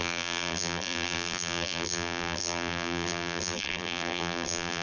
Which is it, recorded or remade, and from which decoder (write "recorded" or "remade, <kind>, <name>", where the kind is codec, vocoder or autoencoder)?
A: remade, vocoder, BigVGAN v2